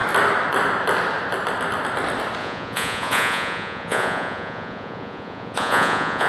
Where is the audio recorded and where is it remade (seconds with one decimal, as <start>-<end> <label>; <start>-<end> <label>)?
0.0-2.4 recorded; 2.4-6.3 remade